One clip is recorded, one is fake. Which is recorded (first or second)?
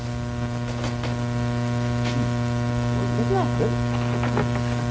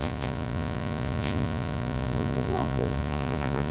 first